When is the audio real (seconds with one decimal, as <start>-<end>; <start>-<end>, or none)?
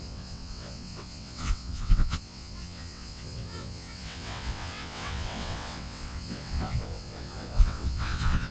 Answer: none